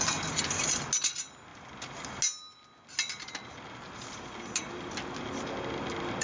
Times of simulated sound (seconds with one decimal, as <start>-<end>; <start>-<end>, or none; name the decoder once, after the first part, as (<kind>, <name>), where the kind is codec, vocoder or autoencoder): none